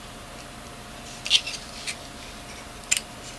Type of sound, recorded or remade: recorded